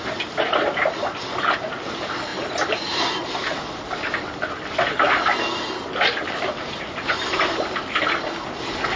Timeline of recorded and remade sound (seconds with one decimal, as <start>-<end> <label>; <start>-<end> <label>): 0.0-9.0 recorded